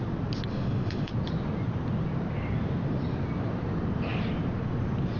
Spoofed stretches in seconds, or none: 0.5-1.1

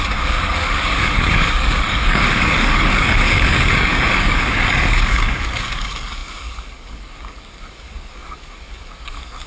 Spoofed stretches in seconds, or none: 0.0-9.5

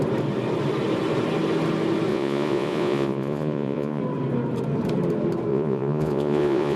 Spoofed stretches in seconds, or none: 2.1-4.0; 5.5-6.8

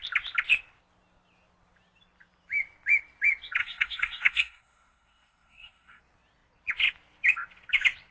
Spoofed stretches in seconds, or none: 3.6-6.0